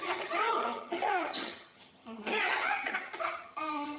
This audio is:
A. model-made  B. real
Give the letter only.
A